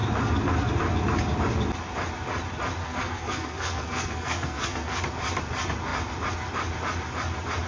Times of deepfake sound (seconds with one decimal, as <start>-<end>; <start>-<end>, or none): 2.8-5.0